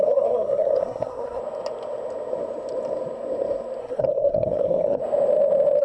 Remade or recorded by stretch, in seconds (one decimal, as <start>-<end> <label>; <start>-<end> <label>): 0.0-1.4 remade; 1.4-3.8 recorded; 3.8-5.0 remade; 5.0-5.8 recorded